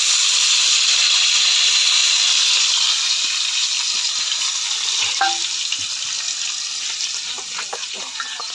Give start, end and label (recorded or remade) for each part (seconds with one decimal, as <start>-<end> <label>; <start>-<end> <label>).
0.0-8.5 recorded